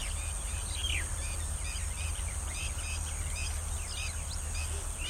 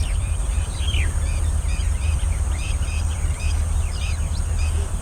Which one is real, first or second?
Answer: first